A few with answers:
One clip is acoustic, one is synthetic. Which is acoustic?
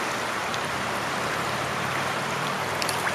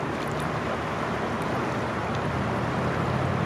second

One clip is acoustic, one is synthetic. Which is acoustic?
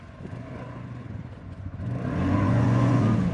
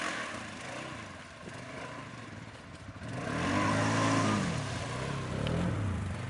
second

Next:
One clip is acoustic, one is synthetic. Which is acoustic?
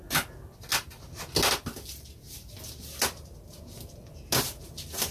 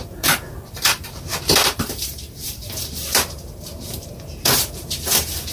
first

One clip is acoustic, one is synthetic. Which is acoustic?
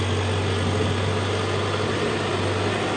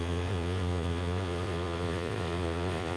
first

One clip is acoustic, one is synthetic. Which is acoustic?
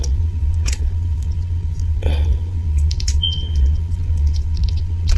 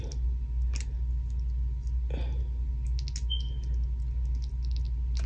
second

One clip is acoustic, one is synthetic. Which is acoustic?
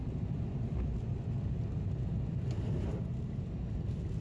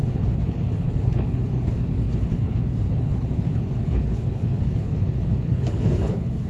first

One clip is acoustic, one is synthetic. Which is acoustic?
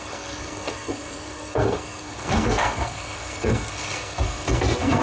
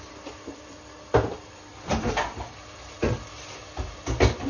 second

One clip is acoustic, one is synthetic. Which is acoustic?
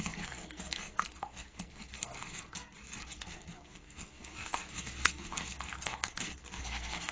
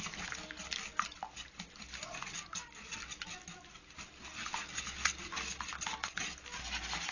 second